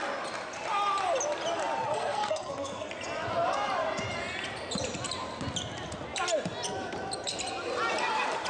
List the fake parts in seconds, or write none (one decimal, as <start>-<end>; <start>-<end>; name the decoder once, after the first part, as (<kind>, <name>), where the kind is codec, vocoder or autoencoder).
1.9-2.9 (codec, SNAC)